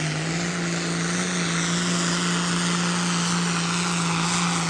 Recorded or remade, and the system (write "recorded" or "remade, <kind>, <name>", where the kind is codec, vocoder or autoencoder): recorded